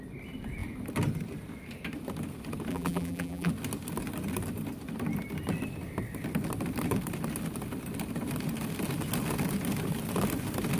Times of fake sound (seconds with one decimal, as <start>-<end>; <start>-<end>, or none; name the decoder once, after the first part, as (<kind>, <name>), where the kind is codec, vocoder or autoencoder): 2.7-3.5 (vocoder, BigVGAN v2)